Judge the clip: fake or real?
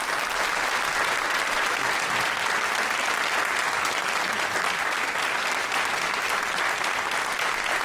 real